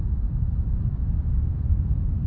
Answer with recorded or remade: recorded